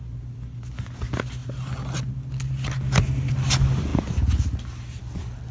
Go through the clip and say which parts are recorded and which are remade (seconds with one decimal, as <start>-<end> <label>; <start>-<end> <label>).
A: 0.0-5.5 recorded